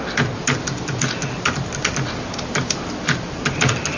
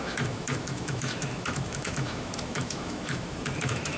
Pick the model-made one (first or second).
second